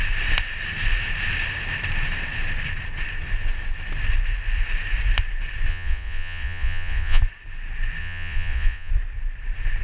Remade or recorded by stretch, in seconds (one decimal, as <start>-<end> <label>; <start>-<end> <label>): 0.0-5.7 recorded; 5.7-7.2 remade; 7.2-8.0 recorded; 8.0-8.9 remade; 8.9-9.8 recorded